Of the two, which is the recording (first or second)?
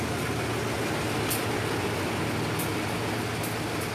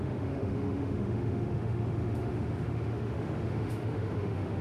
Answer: first